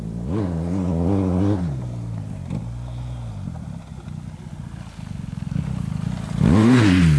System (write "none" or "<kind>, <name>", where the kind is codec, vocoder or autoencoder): none